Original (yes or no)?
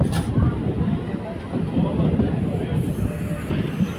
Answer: yes